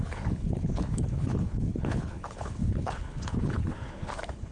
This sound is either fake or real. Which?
fake